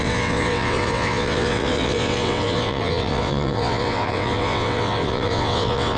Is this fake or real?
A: fake